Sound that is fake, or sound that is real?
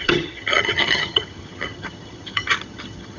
fake